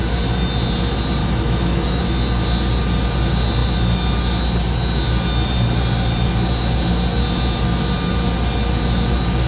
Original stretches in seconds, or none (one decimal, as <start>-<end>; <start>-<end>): 0.0-1.2; 2.0-9.5